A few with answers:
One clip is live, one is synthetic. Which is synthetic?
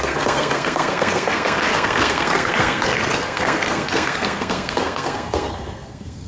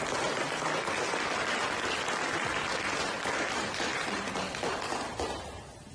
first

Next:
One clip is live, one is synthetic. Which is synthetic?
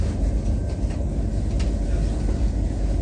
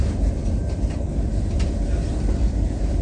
second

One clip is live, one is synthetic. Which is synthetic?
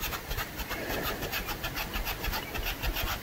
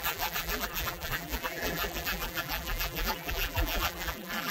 second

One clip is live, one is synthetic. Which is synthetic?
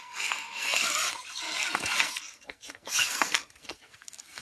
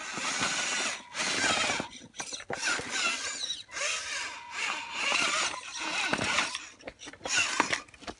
first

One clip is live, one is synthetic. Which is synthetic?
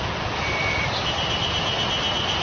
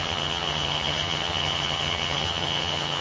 second